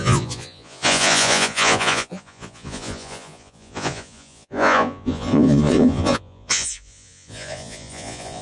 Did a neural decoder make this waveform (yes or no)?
yes